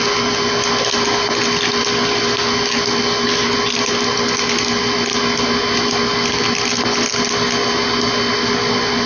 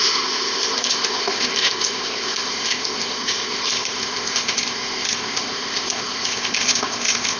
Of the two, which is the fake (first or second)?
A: second